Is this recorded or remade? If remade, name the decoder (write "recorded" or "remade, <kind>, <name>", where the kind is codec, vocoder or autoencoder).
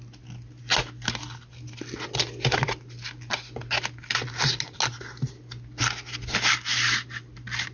recorded